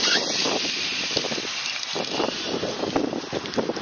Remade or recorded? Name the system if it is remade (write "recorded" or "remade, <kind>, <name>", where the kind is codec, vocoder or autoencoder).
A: recorded